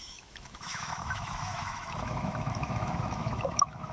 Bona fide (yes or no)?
no